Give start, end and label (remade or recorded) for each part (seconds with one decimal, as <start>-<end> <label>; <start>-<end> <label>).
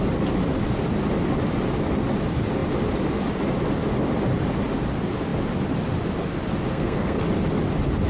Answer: 0.0-6.7 recorded; 6.7-7.2 remade; 7.2-8.1 recorded